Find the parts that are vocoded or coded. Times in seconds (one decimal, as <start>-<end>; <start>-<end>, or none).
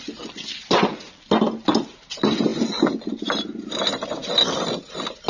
none